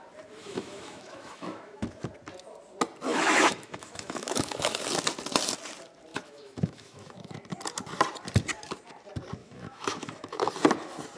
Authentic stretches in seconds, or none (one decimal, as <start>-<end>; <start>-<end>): 0.0-0.4; 1.8-3.1; 4.8-6.1; 7.4-9.4; 10.5-11.2